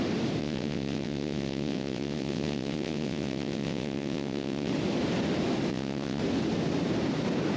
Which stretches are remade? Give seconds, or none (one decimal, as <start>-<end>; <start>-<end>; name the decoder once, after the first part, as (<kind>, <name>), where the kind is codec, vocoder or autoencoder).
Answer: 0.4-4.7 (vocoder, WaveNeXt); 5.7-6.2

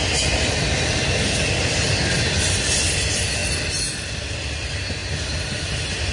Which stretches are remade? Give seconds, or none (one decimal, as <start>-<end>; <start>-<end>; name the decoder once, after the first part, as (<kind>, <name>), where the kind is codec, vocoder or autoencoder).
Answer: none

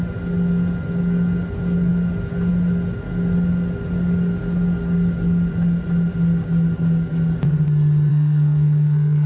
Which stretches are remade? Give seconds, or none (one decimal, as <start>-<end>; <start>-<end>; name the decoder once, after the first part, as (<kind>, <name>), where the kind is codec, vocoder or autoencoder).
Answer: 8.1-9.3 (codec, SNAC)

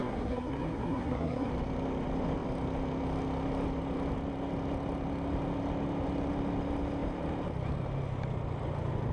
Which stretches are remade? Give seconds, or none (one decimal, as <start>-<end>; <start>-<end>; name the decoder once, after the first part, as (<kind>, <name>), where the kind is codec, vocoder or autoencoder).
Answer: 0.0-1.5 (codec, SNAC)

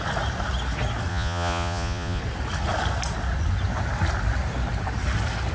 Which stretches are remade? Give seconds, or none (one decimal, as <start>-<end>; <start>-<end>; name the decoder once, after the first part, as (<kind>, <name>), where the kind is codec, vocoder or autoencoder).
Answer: 1.1-2.2 (vocoder, Vocos)